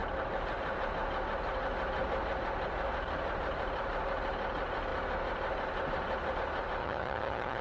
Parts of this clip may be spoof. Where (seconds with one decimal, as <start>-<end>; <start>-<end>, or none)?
6.8-7.6